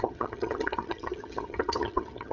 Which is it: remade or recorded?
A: remade